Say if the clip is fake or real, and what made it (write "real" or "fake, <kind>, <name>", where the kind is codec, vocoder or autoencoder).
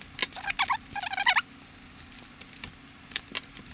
real